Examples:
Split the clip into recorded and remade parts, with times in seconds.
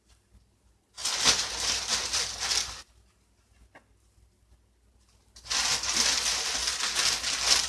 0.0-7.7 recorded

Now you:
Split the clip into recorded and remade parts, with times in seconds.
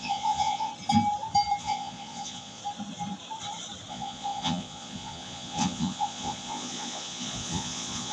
0.0-0.7 remade; 0.7-1.6 recorded; 1.6-2.6 remade; 2.6-3.9 recorded; 3.9-8.1 remade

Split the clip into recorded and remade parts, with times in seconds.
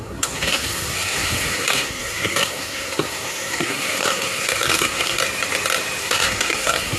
0.0-5.2 remade; 5.2-6.0 recorded; 6.0-7.0 remade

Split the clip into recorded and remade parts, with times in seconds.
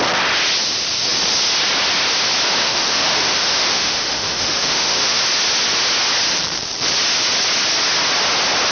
0.0-2.6 recorded; 2.6-5.2 remade; 5.2-8.7 recorded